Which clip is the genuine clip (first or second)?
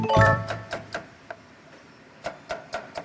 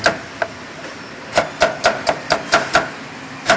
second